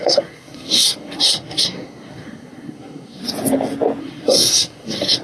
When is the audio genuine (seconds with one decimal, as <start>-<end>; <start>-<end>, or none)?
3.2-4.0